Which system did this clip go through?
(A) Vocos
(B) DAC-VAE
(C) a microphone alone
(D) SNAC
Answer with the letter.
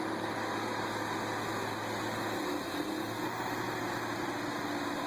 C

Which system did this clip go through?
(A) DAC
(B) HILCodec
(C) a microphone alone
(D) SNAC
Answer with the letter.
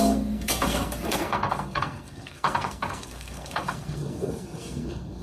D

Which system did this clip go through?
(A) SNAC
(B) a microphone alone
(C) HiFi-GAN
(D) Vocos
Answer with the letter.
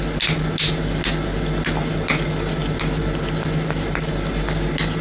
B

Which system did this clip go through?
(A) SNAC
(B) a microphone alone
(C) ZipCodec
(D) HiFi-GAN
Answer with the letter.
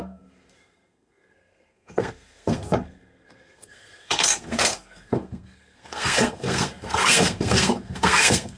A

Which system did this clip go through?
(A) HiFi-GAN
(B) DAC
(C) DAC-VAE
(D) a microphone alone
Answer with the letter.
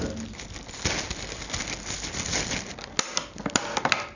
D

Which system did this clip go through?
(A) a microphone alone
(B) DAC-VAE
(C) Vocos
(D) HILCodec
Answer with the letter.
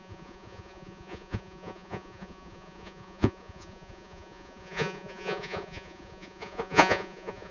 C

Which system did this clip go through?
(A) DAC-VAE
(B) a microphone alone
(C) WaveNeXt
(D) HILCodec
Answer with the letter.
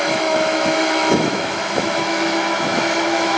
A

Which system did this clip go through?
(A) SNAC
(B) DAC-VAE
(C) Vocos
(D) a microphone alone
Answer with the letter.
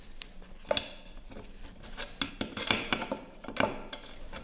D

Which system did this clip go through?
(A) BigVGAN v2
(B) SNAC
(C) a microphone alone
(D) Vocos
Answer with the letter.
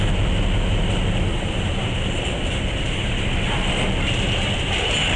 C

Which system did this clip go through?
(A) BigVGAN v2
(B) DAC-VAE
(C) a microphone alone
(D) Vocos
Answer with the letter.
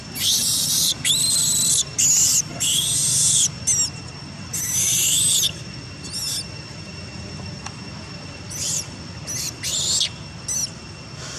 C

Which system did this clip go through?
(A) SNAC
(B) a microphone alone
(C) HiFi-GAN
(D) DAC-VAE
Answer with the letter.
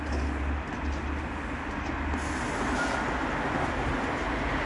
B